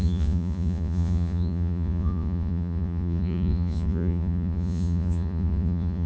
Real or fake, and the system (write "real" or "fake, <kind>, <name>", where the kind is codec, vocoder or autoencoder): fake, vocoder, Vocos